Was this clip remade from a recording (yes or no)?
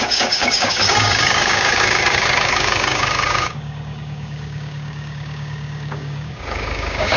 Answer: yes